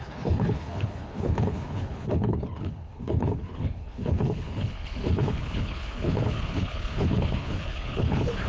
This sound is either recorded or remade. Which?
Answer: remade